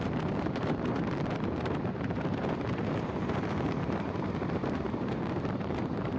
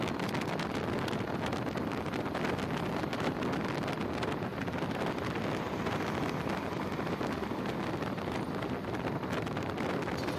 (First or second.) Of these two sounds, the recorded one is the second